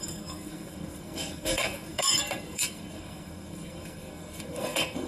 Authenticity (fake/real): fake